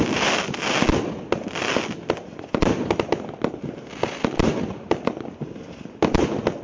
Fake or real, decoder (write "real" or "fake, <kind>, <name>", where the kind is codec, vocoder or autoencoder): real